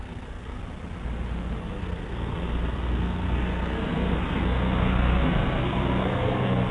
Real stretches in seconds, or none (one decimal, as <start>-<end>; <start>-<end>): 0.6-1.6